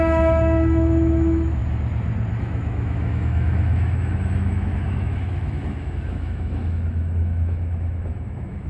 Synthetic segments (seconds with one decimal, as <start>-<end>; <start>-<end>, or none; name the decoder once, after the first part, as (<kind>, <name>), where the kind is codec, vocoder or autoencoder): 0.0-1.6 (autoencoder, DAC-VAE); 2.4-8.7